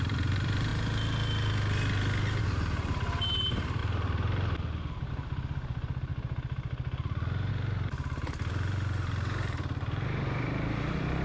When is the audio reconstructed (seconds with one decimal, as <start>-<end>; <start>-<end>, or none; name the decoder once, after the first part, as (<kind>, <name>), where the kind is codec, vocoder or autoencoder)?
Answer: 0.0-0.7 (vocoder, BigVGAN v2); 2.4-3.8; 5.1-6.1; 7.5-11.2